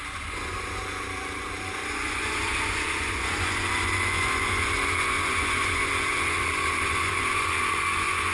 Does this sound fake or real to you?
fake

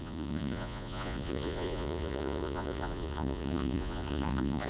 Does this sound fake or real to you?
fake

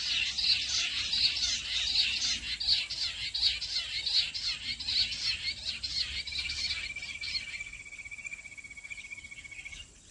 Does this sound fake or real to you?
real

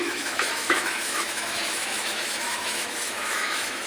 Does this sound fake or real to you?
fake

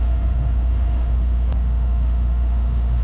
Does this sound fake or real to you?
fake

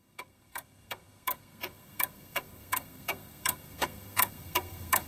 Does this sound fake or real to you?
fake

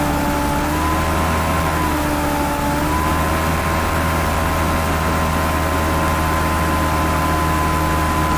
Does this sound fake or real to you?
real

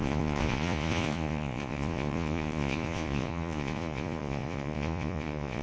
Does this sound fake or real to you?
fake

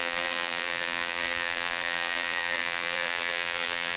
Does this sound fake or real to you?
fake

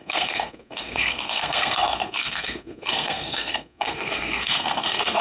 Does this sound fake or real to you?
fake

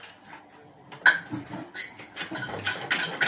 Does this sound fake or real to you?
real